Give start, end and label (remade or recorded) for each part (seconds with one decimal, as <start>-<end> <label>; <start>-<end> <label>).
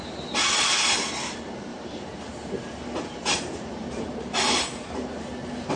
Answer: 0.0-1.7 recorded; 1.7-5.2 remade; 5.2-5.8 recorded